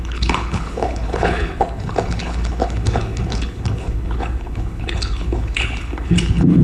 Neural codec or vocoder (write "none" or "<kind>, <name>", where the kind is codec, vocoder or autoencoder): codec, HILCodec